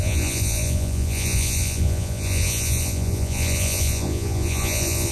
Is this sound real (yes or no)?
no